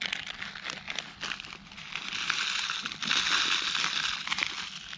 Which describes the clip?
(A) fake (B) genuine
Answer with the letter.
B